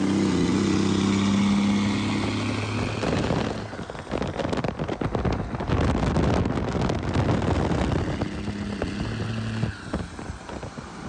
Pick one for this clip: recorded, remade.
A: recorded